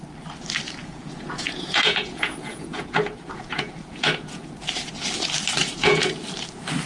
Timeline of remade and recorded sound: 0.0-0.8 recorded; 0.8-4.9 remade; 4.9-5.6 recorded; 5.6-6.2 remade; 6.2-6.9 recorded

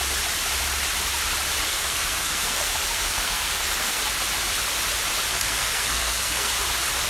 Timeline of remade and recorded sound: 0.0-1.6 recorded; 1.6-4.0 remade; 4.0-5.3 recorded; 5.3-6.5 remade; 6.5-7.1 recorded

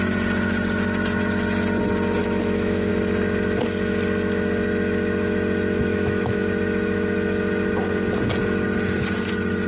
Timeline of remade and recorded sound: 0.0-2.2 recorded; 2.2-2.9 remade; 2.9-5.9 recorded; 5.9-6.4 remade; 6.4-9.7 recorded

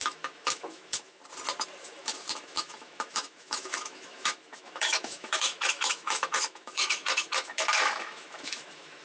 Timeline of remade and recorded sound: 0.0-1.2 remade; 1.2-1.8 recorded; 1.8-9.0 remade

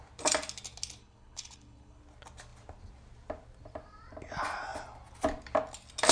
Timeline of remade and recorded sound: 0.0-1.0 recorded; 1.0-2.0 remade; 2.0-6.1 recorded

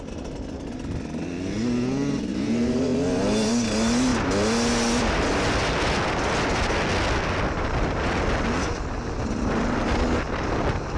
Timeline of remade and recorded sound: 0.0-11.0 recorded